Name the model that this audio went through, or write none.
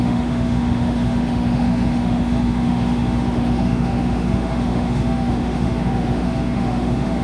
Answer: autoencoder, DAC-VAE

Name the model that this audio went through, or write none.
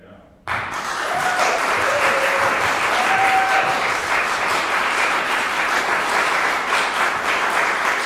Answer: vocoder, BigVGAN v2